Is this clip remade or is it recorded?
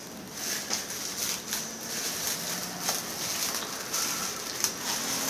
recorded